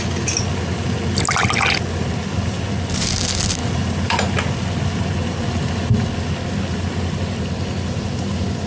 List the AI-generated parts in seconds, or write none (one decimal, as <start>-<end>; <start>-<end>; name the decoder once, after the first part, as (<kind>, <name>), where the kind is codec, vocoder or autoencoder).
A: none